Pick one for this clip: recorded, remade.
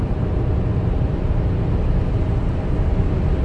recorded